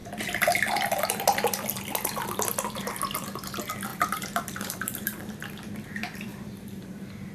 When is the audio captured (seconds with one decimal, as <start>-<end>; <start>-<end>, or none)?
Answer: 0.0-3.9; 5.2-6.3